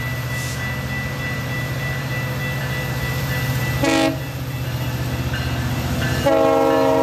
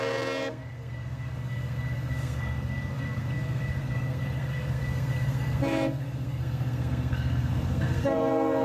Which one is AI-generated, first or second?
second